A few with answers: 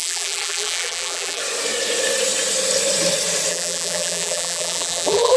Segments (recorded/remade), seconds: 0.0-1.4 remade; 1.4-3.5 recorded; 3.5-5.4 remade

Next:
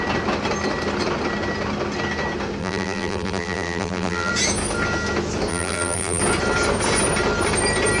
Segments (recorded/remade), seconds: 0.0-2.6 recorded; 2.6-4.3 remade; 4.3-5.5 recorded; 5.5-6.2 remade; 6.2-8.0 recorded

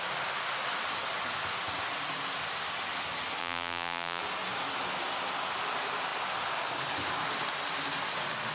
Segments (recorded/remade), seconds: 0.0-3.4 recorded; 3.4-4.2 remade; 4.2-8.5 recorded

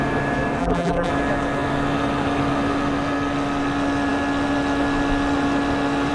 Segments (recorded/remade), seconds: 0.0-0.6 recorded; 0.6-1.1 remade; 1.1-6.1 recorded